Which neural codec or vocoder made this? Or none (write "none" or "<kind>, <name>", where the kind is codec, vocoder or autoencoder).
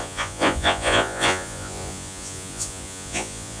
vocoder, Vocos